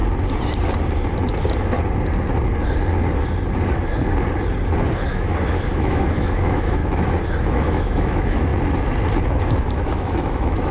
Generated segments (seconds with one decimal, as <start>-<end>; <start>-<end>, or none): 5.1-6.8; 7.4-8.5; 9.4-10.7